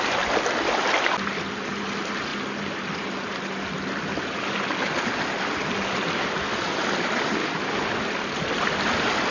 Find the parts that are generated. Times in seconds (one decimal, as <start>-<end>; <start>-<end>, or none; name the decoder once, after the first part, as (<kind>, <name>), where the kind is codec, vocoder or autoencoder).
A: none